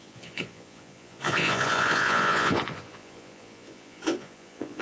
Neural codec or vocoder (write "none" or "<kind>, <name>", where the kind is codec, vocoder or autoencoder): vocoder, Vocos